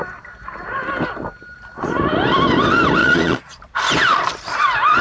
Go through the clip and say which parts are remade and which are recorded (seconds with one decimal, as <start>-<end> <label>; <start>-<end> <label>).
0.0-3.0 recorded; 3.0-3.6 remade; 3.6-5.0 recorded